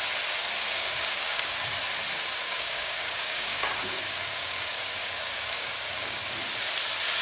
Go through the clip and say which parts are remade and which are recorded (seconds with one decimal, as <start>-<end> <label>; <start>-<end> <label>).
0.0-0.7 recorded; 0.7-1.7 remade; 1.7-2.4 recorded; 2.4-6.2 remade; 6.2-7.2 recorded